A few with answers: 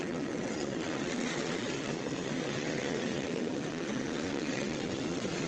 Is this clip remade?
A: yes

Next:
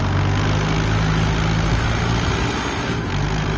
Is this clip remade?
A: no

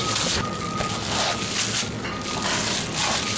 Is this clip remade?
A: no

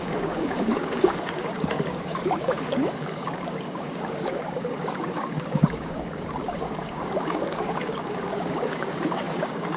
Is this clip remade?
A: yes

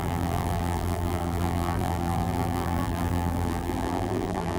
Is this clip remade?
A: yes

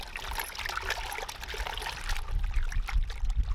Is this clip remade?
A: no